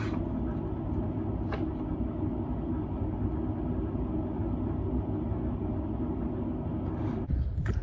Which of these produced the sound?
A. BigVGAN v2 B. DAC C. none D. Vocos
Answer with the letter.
C